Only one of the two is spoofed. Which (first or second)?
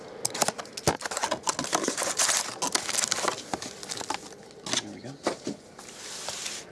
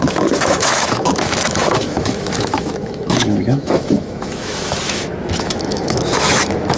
second